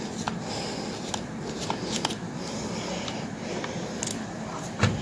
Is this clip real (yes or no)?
yes